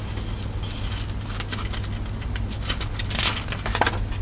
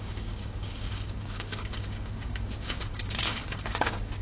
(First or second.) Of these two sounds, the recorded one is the first